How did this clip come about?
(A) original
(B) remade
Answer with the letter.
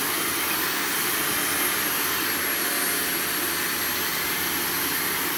A